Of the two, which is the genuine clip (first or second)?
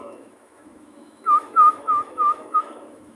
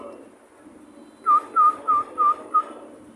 second